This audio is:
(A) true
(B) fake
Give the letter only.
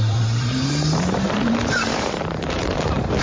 B